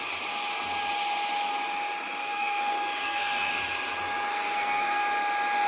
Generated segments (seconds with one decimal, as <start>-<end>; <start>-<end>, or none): 2.2-3.5; 4.3-5.0